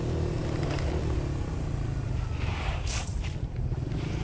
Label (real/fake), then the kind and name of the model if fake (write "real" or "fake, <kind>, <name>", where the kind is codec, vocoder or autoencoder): real